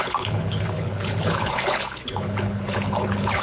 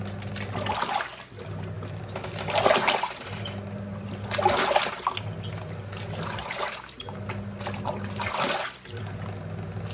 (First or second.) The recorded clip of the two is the second